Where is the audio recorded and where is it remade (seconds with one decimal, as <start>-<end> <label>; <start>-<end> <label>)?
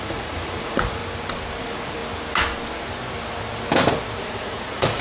0.0-1.0 remade; 1.0-1.6 recorded; 1.6-2.0 remade; 2.0-4.2 recorded; 4.2-5.0 remade